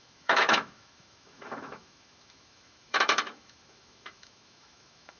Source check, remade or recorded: remade